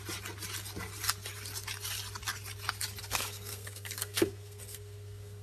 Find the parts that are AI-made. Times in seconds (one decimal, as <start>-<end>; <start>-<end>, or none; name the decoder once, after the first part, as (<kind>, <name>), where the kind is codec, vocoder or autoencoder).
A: 3.0-5.4 (codec, SNAC)